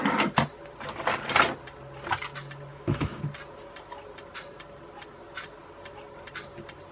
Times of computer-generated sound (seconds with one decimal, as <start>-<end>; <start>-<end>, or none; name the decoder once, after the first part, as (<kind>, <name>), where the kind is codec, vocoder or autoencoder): 2.7-3.2 (autoencoder, DAC-VAE)